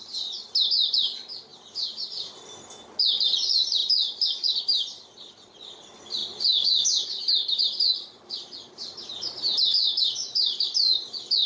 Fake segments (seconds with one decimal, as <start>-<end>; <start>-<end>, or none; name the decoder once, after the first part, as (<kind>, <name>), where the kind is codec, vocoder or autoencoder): none